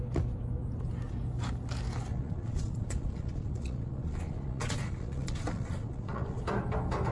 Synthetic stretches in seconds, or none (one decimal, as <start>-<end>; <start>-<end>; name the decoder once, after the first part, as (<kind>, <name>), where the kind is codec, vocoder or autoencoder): 2.1-6.4 (vocoder, Vocos)